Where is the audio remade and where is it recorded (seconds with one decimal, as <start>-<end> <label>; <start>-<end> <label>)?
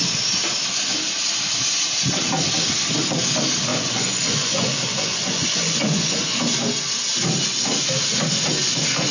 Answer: 0.0-3.7 recorded; 3.7-6.4 remade; 6.4-9.1 recorded